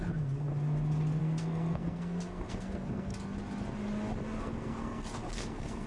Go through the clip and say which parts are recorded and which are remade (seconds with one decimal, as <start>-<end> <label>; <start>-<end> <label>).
0.0-0.5 remade; 0.5-1.2 recorded; 1.2-3.1 remade; 3.1-4.4 recorded; 4.4-5.9 remade